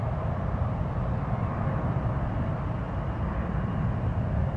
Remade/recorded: recorded